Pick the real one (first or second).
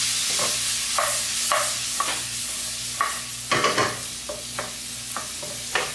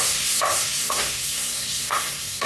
first